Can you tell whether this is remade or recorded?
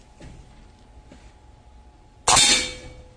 recorded